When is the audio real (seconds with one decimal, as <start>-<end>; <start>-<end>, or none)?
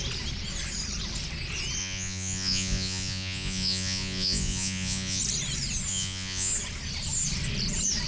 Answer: 0.0-1.8; 5.2-5.9; 6.5-8.1